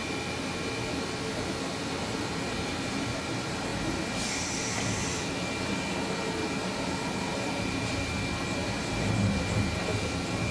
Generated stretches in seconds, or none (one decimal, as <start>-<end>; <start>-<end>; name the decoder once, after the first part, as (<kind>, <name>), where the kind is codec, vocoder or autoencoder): 7.3-8.0 (vocoder, BigVGAN v2); 8.6-9.1